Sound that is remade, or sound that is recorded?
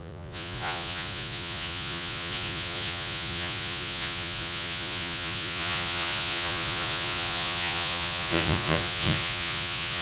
remade